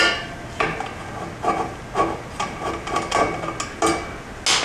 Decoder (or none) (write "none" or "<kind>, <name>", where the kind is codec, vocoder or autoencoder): none